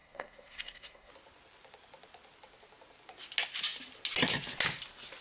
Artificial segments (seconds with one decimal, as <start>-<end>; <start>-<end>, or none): 0.0-1.1